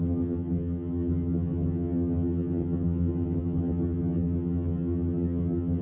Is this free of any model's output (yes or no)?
no